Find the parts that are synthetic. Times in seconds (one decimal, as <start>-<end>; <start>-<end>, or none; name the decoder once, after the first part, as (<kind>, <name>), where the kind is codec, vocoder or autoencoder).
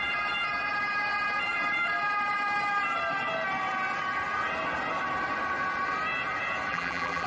6.7-7.3 (vocoder, BigVGAN v2)